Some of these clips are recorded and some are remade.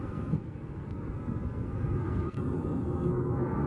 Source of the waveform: remade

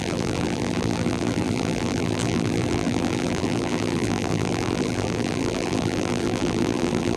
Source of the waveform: remade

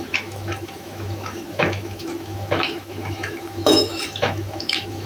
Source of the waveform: remade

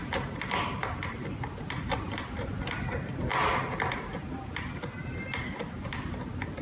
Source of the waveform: recorded